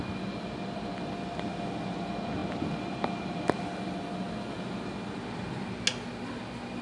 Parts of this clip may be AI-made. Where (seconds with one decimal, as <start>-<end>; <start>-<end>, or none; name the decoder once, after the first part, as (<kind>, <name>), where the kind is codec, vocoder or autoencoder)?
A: none